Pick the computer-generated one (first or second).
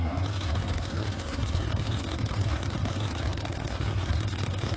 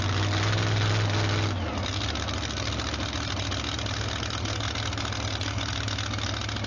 first